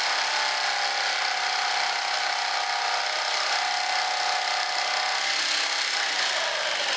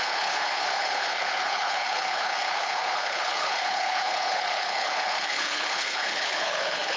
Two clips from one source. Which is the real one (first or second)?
first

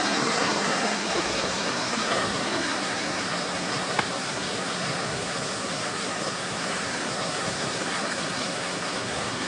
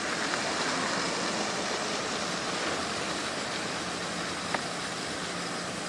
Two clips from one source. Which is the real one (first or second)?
second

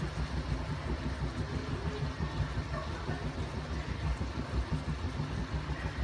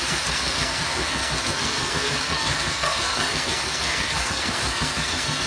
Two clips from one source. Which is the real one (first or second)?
first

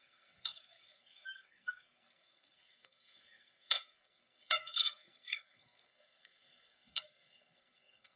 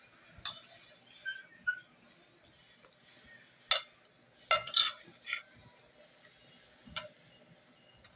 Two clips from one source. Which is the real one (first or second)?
second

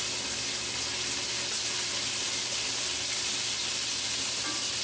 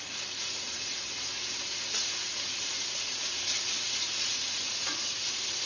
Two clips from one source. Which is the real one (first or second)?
first